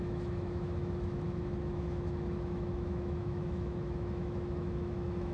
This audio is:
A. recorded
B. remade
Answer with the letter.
B